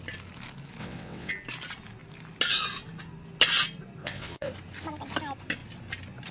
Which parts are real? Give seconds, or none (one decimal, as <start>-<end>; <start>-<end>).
0.0-0.8; 1.3-4.0; 4.5-6.3